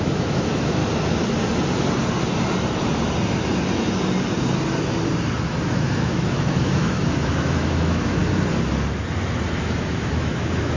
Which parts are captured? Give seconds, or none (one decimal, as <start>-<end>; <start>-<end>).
0.8-5.4; 8.2-9.6